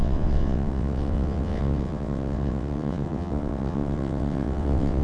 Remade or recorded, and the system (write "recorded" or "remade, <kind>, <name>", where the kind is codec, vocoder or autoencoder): remade, vocoder, WaveNeXt